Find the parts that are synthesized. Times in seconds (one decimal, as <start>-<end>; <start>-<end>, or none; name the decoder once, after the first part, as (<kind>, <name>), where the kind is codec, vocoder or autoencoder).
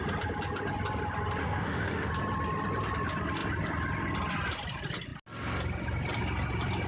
1.4-2.1 (autoencoder, DAC-VAE)